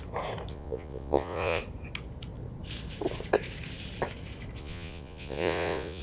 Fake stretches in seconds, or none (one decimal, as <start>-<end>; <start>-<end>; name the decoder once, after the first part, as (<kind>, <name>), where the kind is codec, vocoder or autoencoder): 0.5-1.6 (vocoder, Vocos); 4.6-6.0